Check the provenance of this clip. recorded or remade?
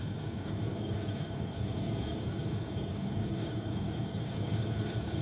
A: remade